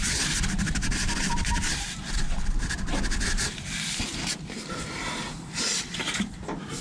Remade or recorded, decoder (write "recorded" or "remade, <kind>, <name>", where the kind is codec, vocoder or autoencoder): remade, vocoder, BigVGAN v2